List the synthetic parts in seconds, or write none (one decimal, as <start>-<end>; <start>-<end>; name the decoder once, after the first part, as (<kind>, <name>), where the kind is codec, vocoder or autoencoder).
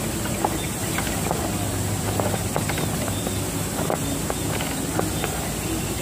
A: 0.8-1.3 (vocoder, BigVGAN v2)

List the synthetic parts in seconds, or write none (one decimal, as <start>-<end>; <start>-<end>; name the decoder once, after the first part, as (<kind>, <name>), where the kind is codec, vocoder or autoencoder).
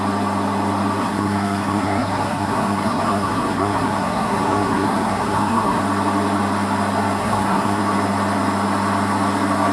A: 1.0-5.8 (codec, SNAC); 7.2-7.8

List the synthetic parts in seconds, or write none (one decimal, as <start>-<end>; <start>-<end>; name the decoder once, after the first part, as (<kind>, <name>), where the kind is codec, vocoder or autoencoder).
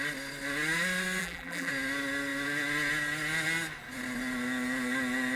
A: 1.2-1.7 (vocoder, BigVGAN v2)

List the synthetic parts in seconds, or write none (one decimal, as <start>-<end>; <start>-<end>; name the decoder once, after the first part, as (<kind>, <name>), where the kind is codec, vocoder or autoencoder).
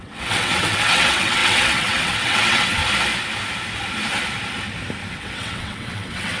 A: 0.0-2.8 (vocoder, WaveNeXt); 5.1-6.4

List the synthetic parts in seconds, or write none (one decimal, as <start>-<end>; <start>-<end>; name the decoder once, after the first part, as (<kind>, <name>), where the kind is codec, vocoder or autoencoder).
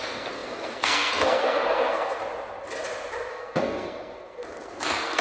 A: 0.0-2.2 (codec, SNAC); 3.3-5.2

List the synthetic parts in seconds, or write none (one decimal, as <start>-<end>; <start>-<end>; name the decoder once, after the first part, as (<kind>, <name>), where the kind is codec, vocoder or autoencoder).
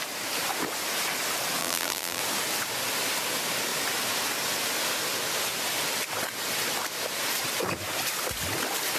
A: 1.6-2.2 (vocoder, BigVGAN v2)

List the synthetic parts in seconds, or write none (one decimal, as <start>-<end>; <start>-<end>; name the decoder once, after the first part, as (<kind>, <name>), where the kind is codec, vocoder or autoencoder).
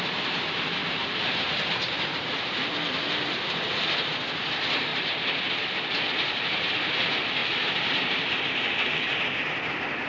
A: 0.8-2.4 (vocoder, BigVGAN v2); 4.9-5.4; 7.4-8.3